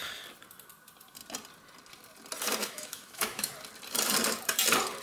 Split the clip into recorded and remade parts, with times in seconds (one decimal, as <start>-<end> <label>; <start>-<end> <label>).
0.0-2.6 recorded; 2.6-3.5 remade; 3.5-5.0 recorded